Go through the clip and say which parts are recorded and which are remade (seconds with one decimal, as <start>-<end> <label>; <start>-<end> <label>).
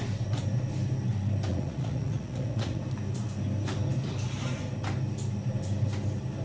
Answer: 0.0-1.5 recorded; 1.5-2.8 remade; 2.8-6.4 recorded